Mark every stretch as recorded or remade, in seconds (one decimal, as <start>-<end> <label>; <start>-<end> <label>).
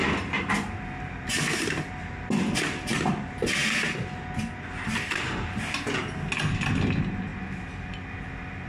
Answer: 0.0-8.7 recorded